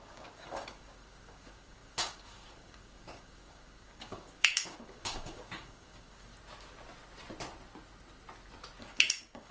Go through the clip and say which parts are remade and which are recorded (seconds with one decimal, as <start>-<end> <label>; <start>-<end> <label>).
0.0-6.3 remade; 6.3-8.8 recorded; 8.8-9.5 remade